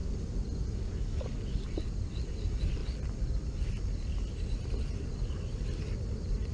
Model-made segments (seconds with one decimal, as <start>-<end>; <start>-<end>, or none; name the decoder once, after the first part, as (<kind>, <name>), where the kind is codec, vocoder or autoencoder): 2.8-3.3 (vocoder, BigVGAN v2)